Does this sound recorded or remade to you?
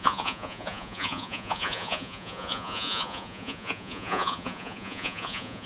remade